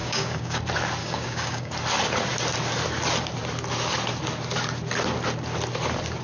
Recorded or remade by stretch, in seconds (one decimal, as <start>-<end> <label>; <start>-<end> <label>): 0.0-0.6 remade; 0.6-1.0 recorded; 1.0-1.7 remade; 1.7-6.2 recorded